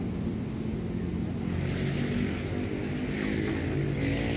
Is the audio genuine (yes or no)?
yes